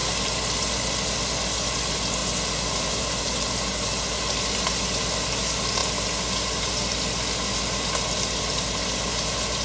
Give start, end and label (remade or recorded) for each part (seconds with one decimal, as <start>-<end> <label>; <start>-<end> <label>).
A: 0.0-9.6 recorded